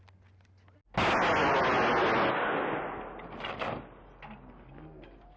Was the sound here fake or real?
real